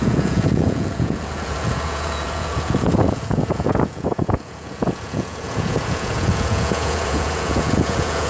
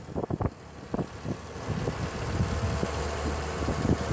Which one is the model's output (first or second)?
first